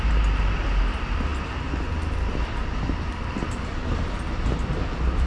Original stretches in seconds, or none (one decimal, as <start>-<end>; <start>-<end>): 0.0-5.3